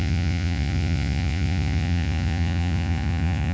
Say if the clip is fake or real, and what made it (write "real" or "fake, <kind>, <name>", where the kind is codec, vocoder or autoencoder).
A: fake, vocoder, Vocos